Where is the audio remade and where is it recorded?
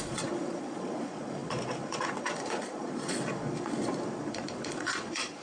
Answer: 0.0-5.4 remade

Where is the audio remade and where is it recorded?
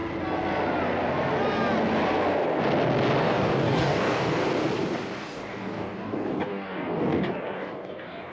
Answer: 0.0-3.2 recorded; 3.2-4.4 remade; 4.4-5.2 recorded; 5.2-8.3 remade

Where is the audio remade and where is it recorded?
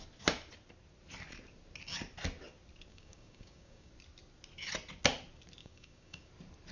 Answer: 0.0-2.9 recorded; 2.9-3.9 remade; 3.9-5.6 recorded; 5.6-6.3 remade; 6.3-6.7 recorded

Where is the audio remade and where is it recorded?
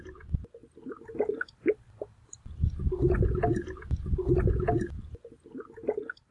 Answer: 0.0-6.3 recorded